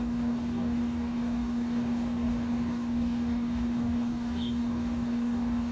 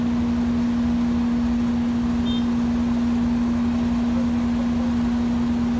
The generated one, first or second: first